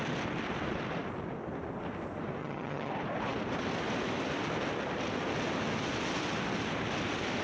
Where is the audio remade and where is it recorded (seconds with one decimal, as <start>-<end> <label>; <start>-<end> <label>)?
0.0-2.4 recorded; 2.4-2.9 remade; 2.9-7.4 recorded